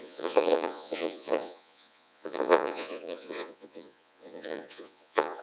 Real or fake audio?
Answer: fake